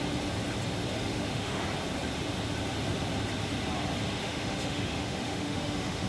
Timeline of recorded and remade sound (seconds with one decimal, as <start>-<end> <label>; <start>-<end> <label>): 0.0-1.1 recorded; 1.1-1.6 remade; 1.6-4.2 recorded; 4.2-6.1 remade